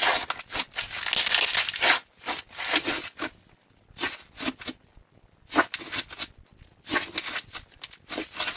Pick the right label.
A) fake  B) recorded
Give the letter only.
B